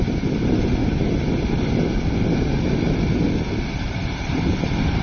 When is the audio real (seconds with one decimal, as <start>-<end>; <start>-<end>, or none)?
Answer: 0.8-3.8